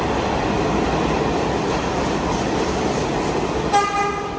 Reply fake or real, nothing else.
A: real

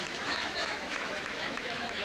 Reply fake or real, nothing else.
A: fake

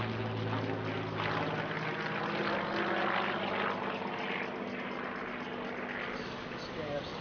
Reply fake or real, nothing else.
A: real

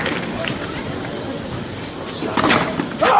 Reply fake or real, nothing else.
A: real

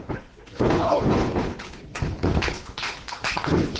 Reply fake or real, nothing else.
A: fake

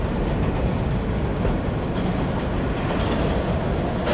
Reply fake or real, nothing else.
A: real